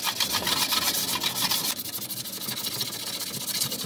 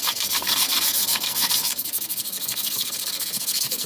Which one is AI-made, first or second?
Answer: second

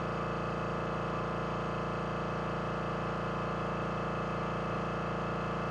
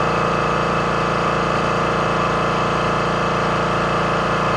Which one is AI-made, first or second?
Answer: second